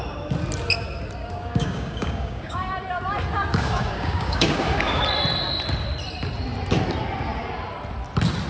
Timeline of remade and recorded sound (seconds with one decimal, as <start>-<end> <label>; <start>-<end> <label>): 0.0-1.2 recorded; 1.2-2.7 remade; 2.7-3.5 recorded; 3.5-5.0 remade; 5.0-8.5 recorded